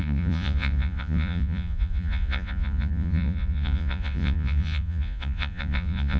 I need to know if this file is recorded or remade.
remade